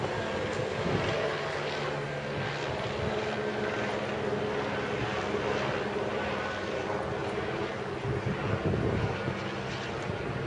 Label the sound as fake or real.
real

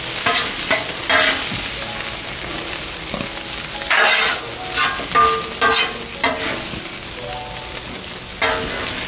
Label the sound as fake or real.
real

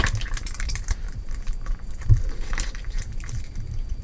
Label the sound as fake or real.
fake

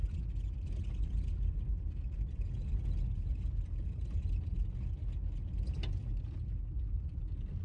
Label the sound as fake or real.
real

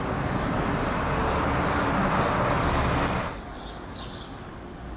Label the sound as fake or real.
real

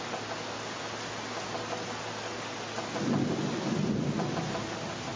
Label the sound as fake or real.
real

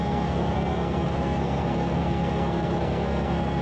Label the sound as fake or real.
fake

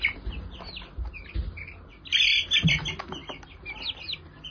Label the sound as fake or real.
real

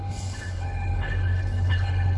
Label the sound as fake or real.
fake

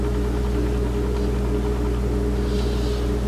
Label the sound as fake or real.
real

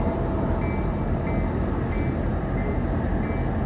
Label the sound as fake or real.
real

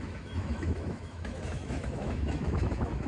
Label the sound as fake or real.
fake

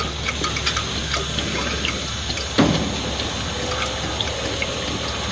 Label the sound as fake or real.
real